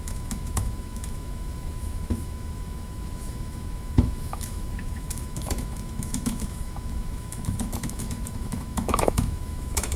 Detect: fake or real fake